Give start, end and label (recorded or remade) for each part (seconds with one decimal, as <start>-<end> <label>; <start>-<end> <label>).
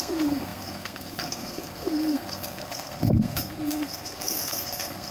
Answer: 0.0-5.1 remade